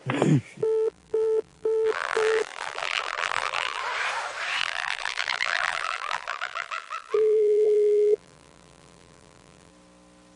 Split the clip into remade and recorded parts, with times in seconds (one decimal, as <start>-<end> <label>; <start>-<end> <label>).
0.0-0.6 recorded; 0.6-3.8 remade; 3.8-4.6 recorded; 4.6-9.7 remade; 9.7-10.4 recorded